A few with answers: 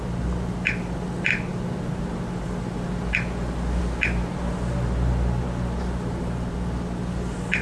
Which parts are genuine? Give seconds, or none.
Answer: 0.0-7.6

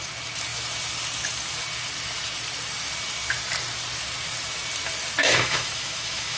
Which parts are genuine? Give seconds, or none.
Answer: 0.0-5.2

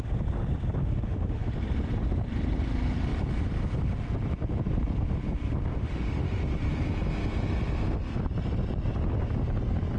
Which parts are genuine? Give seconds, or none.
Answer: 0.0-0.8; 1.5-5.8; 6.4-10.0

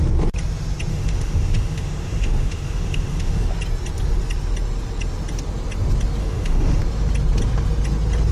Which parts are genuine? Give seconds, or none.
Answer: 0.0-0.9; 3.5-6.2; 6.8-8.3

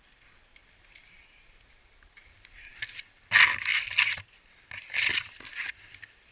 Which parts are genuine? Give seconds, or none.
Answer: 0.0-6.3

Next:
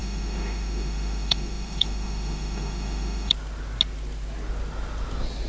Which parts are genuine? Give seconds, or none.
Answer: 3.3-5.5

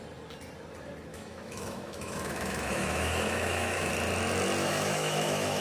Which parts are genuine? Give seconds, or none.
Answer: 0.0-1.1; 3.9-4.6